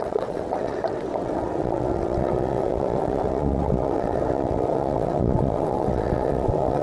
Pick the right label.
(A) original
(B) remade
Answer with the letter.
B